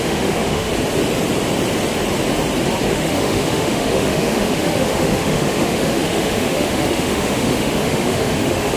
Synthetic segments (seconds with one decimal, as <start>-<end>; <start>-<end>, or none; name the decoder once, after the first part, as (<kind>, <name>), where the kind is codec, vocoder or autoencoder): 0.0-0.7 (autoencoder, DAC-VAE); 2.9-8.8